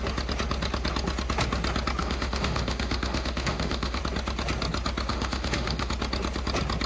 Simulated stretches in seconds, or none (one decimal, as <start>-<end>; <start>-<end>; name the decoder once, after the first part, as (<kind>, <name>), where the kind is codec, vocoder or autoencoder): 2.0-4.0 (autoencoder, DAC-VAE); 5.1-5.9